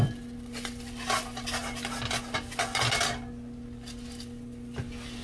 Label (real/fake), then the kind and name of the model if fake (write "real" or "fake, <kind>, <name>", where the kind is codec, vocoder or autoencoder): real